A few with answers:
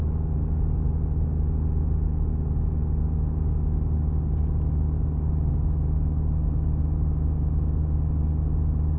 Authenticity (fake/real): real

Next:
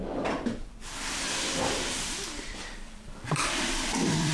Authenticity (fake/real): fake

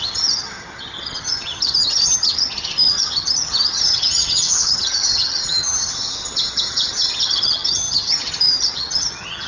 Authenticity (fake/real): fake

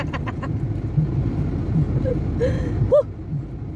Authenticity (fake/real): real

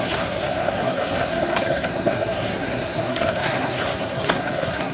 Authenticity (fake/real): fake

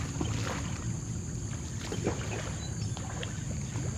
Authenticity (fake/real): real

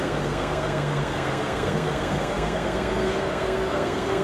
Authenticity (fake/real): fake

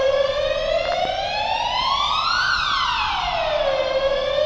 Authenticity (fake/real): real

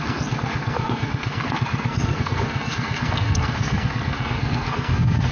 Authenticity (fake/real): fake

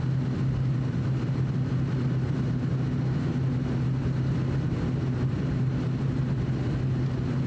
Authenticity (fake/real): real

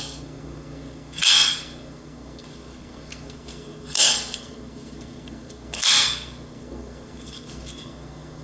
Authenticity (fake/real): fake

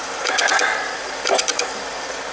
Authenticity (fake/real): fake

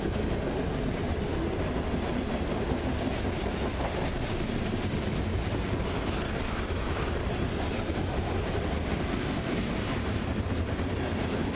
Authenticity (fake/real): real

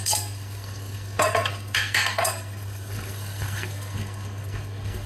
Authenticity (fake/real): fake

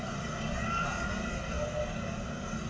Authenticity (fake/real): real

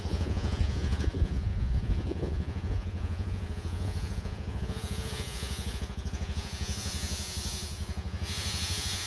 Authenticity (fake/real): fake